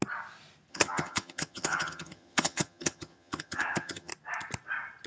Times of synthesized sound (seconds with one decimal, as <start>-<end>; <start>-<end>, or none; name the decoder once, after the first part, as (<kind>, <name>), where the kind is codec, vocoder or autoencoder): 0.7-4.1 (vocoder, HiFi-GAN)

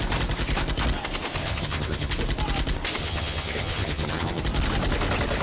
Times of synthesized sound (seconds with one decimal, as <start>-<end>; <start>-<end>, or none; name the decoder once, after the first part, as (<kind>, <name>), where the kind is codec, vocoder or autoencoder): 1.4-2.1 (vocoder, HiFi-GAN); 3.0-4.4